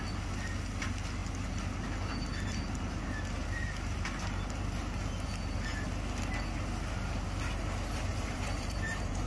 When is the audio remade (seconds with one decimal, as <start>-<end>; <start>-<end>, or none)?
8.1-9.3